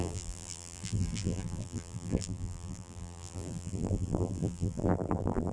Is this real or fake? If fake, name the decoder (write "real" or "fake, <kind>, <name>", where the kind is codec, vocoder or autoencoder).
fake, vocoder, BigVGAN v2